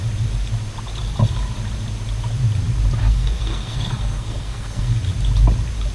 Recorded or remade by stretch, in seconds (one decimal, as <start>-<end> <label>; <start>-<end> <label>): 0.0-3.0 recorded; 3.0-5.0 remade; 5.0-5.9 recorded